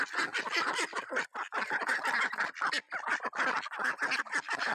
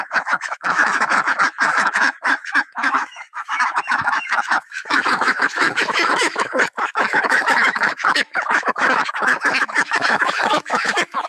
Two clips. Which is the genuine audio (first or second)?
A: first